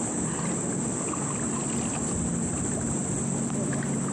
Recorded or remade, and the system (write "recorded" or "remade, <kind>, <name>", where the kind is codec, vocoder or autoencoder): recorded